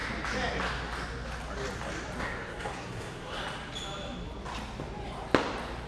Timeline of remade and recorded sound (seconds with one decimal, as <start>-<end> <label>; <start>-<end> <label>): 0.0-2.2 recorded; 2.2-3.4 remade; 3.4-5.9 recorded